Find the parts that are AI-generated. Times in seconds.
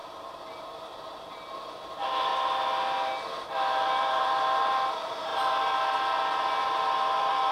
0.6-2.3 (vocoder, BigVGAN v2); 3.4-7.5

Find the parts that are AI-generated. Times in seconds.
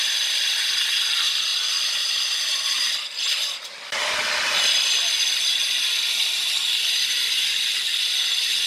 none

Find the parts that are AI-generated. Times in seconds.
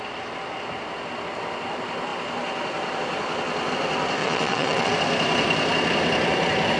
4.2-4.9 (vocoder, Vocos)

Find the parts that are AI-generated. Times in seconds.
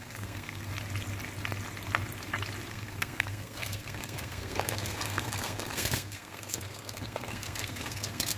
0.0-0.7 (codec, SNAC); 2.7-8.4